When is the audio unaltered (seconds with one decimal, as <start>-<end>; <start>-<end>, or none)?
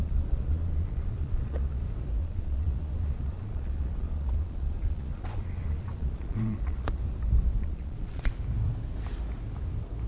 1.8-2.2; 7.0-7.6; 8.3-10.1